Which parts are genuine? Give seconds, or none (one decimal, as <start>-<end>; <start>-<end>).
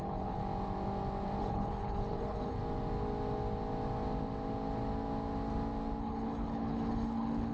0.4-1.4; 2.6-6.0